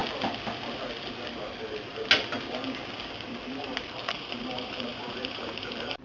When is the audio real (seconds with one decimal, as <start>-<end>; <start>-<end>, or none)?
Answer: 0.0-3.6